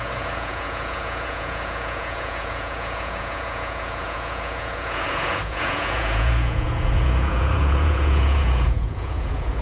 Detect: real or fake fake